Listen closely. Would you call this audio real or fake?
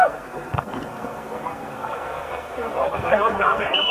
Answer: fake